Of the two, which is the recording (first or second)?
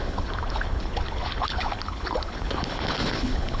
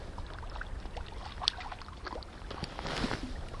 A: second